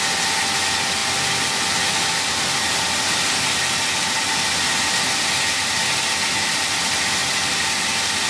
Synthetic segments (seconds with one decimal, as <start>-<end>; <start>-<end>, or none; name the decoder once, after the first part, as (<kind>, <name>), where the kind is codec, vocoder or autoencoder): none